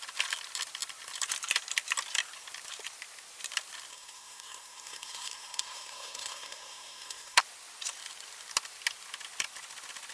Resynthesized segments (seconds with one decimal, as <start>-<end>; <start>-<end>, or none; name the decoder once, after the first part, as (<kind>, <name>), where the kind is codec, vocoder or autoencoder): 3.9-7.4 (codec, SNAC)